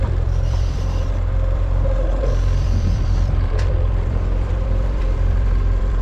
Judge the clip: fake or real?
fake